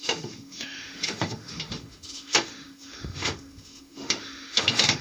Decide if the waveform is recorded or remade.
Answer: remade